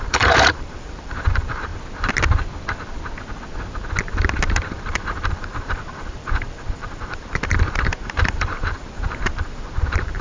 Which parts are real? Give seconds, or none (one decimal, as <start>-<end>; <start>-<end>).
1.7-4.7